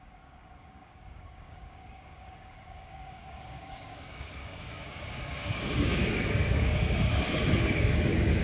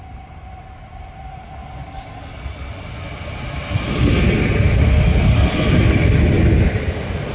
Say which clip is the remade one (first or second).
first